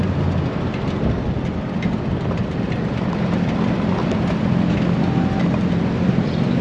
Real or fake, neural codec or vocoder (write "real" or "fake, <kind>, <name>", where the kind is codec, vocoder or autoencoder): real